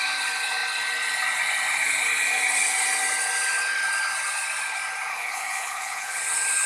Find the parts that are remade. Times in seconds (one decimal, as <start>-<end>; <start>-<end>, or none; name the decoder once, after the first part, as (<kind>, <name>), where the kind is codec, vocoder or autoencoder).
5.1-6.2 (codec, HILCodec)